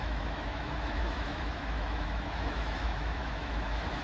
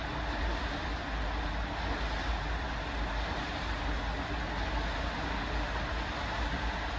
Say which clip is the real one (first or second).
second